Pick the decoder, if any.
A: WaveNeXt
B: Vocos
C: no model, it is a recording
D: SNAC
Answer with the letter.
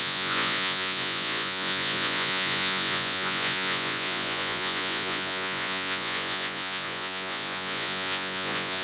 B